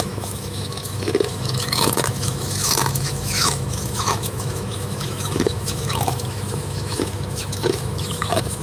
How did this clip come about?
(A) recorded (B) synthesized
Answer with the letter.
B